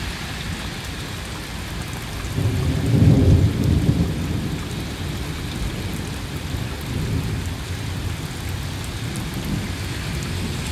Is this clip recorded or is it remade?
recorded